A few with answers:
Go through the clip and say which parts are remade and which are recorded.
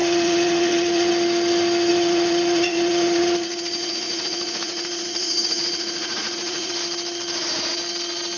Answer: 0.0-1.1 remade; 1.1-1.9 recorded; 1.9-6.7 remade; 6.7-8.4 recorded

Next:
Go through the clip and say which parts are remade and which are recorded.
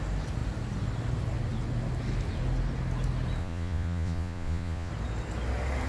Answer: 0.0-3.4 recorded; 3.4-4.9 remade; 4.9-5.9 recorded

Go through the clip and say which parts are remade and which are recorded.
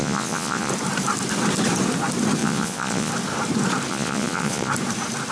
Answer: 0.0-0.7 remade; 0.7-2.4 recorded; 2.4-3.1 remade; 3.1-3.9 recorded; 3.9-4.7 remade; 4.7-5.3 recorded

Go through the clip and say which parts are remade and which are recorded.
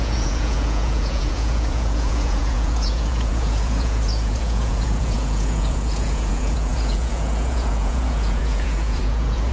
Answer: 0.0-9.5 remade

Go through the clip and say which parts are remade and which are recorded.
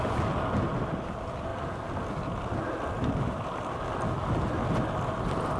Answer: 0.0-5.6 recorded